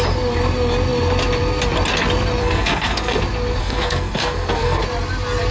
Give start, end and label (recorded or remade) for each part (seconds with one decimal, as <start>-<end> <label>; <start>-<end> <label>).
0.0-2.4 recorded; 2.4-3.2 remade; 3.2-3.6 recorded; 3.6-4.8 remade; 4.8-5.5 recorded